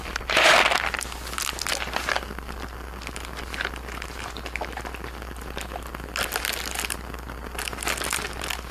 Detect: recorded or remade recorded